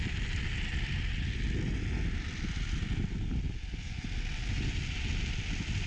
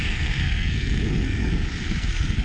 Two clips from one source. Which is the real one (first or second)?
first